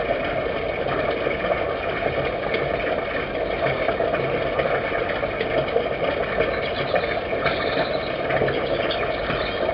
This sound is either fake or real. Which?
real